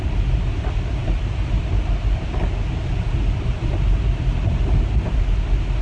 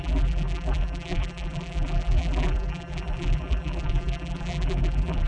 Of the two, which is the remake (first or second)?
second